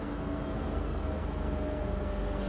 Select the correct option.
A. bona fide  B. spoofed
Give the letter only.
B